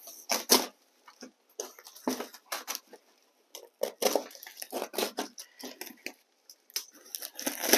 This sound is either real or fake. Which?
real